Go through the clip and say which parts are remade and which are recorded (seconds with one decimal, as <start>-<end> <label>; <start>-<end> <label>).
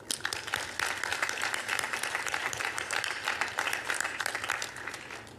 0.0-1.1 recorded; 1.1-4.3 remade; 4.3-5.4 recorded